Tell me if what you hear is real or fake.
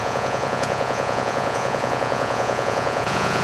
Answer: fake